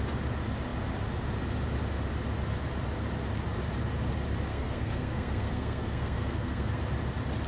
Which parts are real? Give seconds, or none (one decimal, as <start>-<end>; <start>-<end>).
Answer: 0.0-4.5; 6.8-7.5